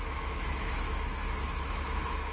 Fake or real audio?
fake